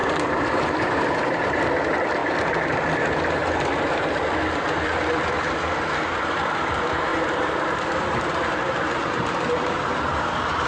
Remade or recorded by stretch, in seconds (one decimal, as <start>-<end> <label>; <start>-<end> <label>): 0.0-1.6 remade; 1.6-7.1 recorded; 7.1-10.2 remade; 10.2-10.7 recorded